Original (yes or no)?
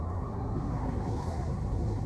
no